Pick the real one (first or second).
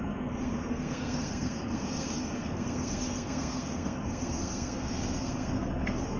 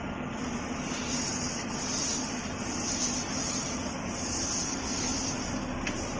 second